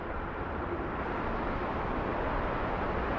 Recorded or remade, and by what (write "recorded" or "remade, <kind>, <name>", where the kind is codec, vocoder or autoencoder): recorded